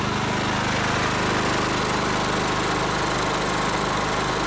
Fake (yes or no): no